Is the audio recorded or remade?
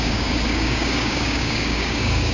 remade